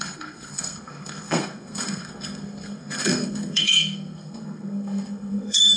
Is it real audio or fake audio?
fake